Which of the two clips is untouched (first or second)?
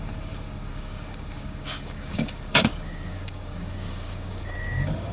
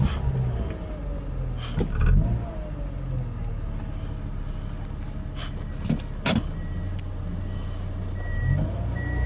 second